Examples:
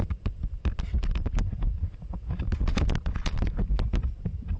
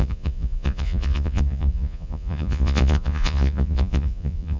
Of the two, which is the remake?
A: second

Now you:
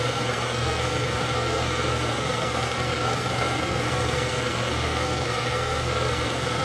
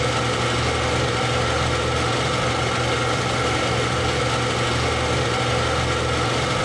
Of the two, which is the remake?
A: first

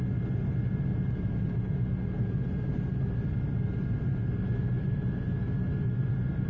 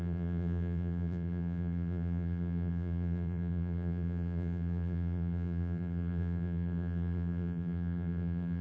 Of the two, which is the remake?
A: second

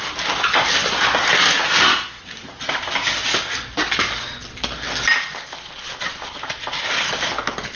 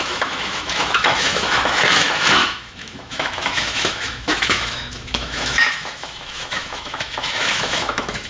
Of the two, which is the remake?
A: second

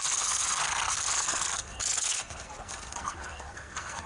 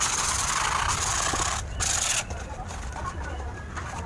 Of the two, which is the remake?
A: first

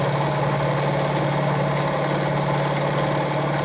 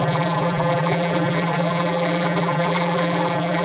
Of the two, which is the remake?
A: second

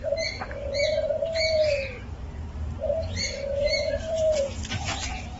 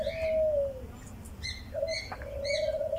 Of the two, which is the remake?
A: first